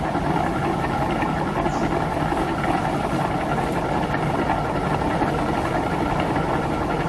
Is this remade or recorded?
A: recorded